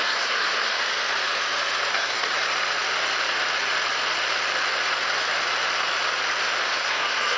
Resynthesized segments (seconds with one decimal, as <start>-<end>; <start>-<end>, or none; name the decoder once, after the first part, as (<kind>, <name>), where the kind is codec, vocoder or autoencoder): 0.0-0.8 (codec, SNAC); 1.9-2.3; 6.6-7.4